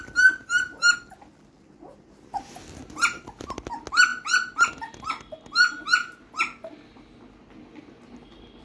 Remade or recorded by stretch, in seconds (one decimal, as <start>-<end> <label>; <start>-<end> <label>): 0.0-8.6 recorded